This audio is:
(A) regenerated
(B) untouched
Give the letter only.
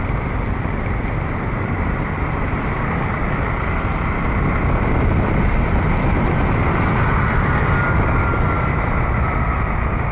B